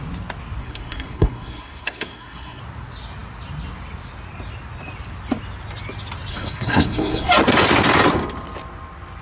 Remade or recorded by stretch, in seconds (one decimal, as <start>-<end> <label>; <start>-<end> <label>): 0.0-0.6 recorded; 0.6-2.6 remade; 2.6-6.3 recorded; 6.3-7.3 remade; 7.3-9.2 recorded